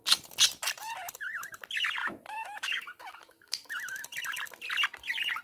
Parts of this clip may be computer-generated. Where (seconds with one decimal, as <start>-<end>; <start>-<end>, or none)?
2.0-3.8